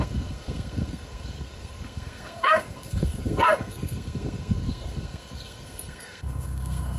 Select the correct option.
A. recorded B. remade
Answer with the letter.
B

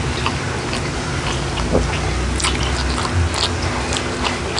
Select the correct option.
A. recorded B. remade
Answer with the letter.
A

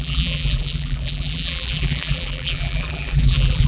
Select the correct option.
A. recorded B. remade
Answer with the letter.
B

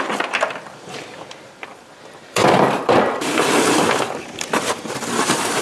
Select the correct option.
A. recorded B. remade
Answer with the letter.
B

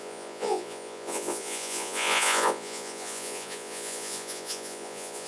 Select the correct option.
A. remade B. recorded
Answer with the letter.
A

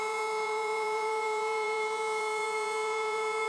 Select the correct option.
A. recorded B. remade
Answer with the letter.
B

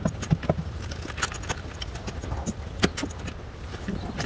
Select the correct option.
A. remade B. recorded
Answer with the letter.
B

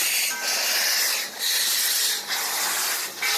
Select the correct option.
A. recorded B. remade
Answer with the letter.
B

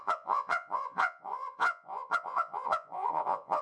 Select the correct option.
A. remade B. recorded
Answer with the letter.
A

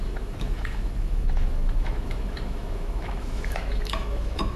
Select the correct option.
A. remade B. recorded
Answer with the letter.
A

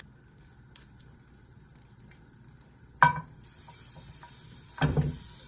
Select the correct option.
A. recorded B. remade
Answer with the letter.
A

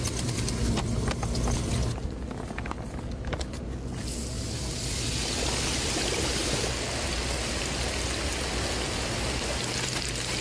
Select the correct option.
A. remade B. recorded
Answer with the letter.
B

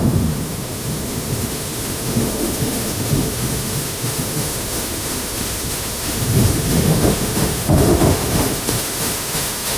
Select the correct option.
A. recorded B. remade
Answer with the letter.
B